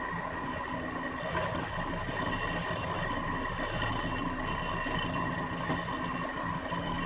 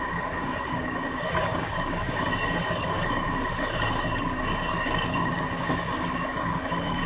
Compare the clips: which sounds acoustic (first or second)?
first